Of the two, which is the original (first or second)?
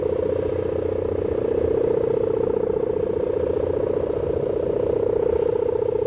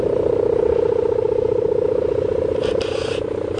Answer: first